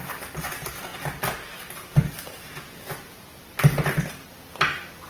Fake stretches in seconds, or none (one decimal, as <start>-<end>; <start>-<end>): none